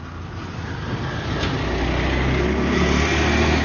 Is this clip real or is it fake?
real